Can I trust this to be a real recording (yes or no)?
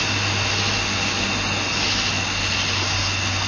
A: yes